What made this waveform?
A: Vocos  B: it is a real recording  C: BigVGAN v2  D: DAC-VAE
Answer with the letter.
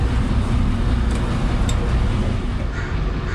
B